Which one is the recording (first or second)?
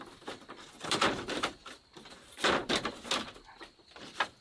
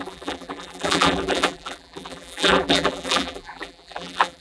first